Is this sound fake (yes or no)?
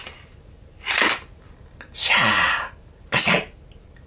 no